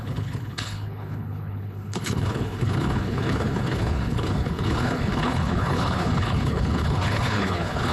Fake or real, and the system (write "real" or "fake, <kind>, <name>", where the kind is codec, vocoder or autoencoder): fake, codec, HILCodec